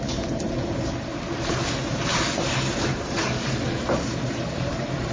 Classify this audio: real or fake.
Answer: fake